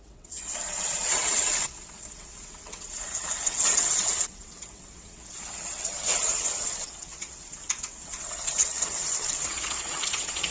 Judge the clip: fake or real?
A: fake